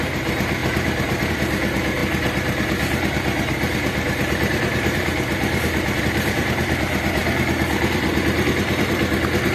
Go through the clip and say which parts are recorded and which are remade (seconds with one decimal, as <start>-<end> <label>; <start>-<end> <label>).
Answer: 0.0-7.2 remade; 7.2-9.5 recorded